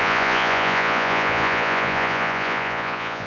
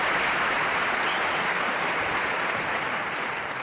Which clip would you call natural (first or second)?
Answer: second